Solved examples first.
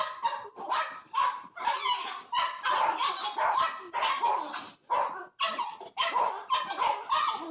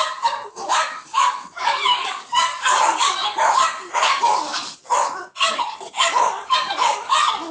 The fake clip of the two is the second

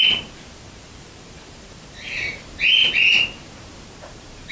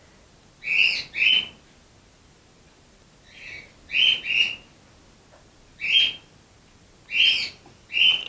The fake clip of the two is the first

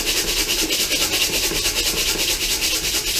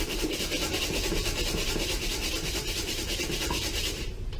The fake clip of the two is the second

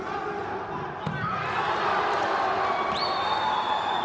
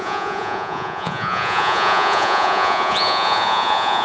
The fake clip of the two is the second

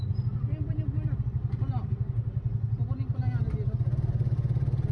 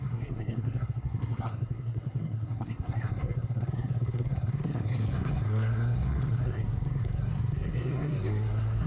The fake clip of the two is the second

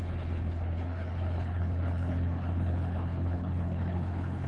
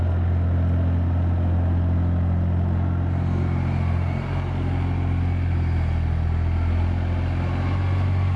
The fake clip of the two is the first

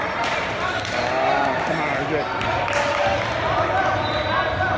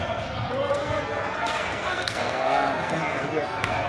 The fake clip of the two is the second